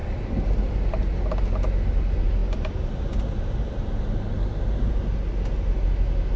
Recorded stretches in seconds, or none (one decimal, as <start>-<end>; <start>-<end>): 0.0-6.4